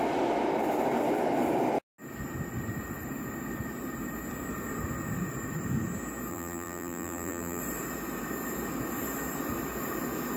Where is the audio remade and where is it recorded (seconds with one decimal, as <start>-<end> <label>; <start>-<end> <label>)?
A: 0.0-6.3 recorded; 6.3-7.6 remade; 7.6-10.4 recorded